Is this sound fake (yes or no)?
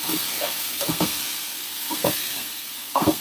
yes